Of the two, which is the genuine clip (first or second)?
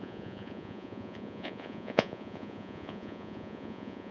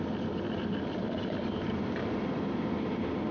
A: second